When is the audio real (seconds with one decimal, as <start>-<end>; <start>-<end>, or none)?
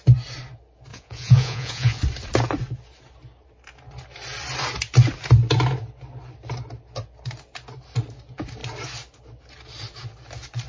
0.0-0.9; 2.0-10.7